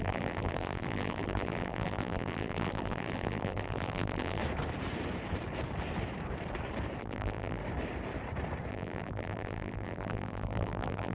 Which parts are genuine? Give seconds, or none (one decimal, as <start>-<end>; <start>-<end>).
4.4-7.0; 7.6-8.7